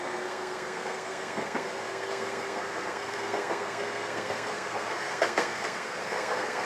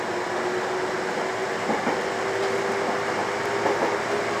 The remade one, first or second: first